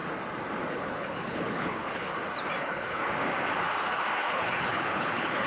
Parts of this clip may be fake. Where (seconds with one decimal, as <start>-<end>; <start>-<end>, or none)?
0.7-2.1; 2.6-3.0; 4.2-5.5